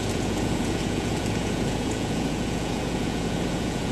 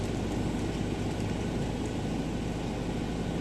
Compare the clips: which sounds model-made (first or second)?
first